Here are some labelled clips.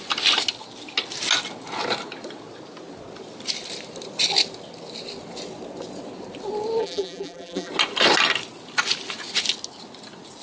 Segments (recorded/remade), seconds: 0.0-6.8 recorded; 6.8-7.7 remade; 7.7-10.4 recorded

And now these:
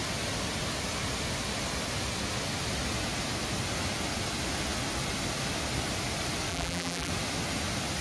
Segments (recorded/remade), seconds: 0.0-6.5 recorded; 6.5-7.1 remade; 7.1-8.0 recorded

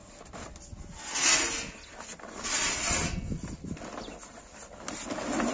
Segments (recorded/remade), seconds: 0.0-5.5 recorded

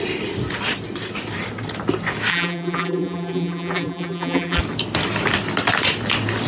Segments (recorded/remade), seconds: 0.0-2.3 recorded; 2.3-4.6 remade; 4.6-6.5 recorded

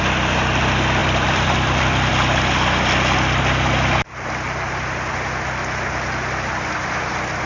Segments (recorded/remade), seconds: 0.0-1.0 recorded; 1.0-2.1 remade; 2.1-7.5 recorded

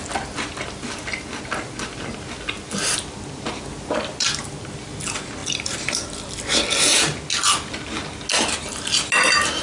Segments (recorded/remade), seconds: 0.0-5.4 recorded; 5.4-6.1 remade; 6.1-9.6 recorded